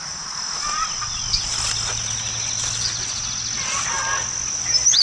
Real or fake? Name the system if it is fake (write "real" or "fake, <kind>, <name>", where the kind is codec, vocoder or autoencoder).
real